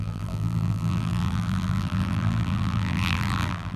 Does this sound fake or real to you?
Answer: fake